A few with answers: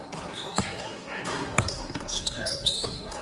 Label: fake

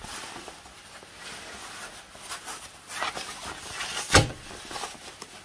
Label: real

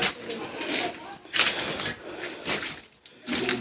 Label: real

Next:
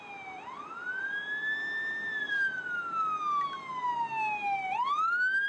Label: real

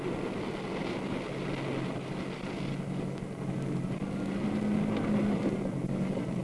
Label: real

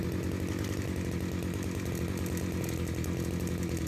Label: real